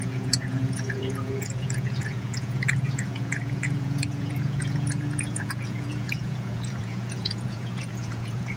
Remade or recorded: remade